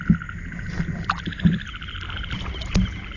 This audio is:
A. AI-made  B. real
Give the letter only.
B